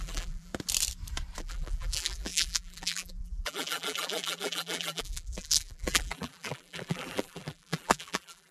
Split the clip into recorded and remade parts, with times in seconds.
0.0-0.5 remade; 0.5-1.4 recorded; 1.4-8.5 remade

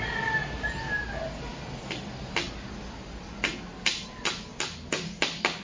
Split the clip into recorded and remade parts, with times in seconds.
0.0-5.6 recorded

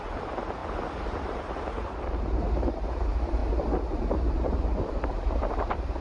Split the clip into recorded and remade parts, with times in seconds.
0.0-0.6 remade; 0.6-1.2 recorded; 1.2-3.4 remade; 3.4-4.1 recorded; 4.1-6.0 remade

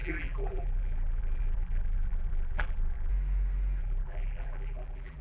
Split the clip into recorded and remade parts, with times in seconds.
0.0-3.1 remade; 3.1-3.8 recorded; 3.8-5.2 remade

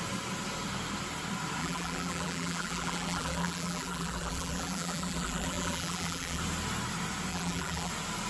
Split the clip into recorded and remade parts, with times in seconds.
0.0-1.6 recorded; 1.6-6.4 remade; 6.4-7.3 recorded; 7.3-7.9 remade; 7.9-8.3 recorded

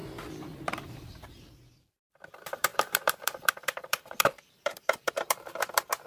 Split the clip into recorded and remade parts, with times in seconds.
0.0-0.7 recorded; 0.7-6.1 remade

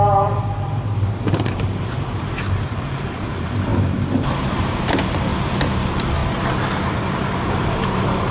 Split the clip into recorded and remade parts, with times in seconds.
0.0-5.3 remade; 5.3-5.8 recorded; 5.8-6.2 remade; 6.2-7.3 recorded; 7.3-8.3 remade